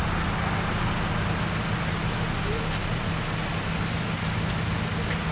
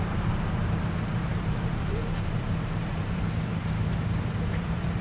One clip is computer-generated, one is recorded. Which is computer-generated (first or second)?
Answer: second